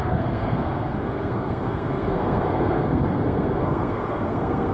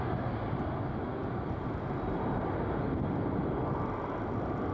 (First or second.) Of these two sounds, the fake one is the first